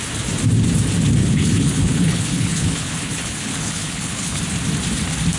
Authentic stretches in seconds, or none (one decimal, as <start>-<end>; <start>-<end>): 0.0-1.2; 4.4-5.4